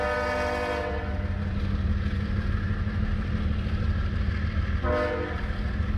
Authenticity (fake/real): real